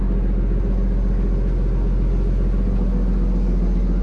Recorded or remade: recorded